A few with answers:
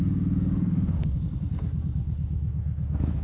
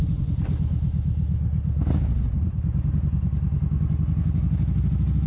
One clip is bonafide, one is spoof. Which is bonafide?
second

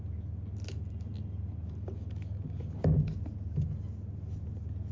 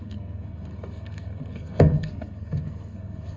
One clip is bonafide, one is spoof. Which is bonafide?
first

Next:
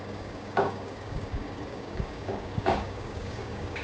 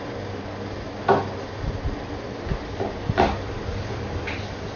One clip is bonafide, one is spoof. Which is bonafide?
second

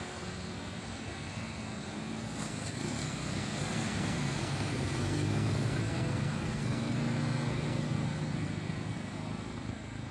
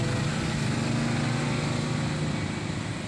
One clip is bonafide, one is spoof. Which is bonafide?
second